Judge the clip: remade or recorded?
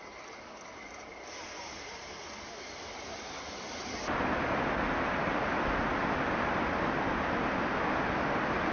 recorded